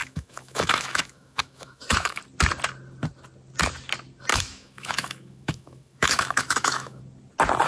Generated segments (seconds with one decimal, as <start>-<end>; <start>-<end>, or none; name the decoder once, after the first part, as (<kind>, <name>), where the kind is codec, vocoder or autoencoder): 0.0-2.2 (autoencoder, DAC-VAE); 4.3-7.0